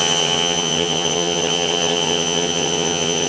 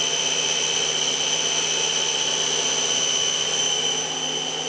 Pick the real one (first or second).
second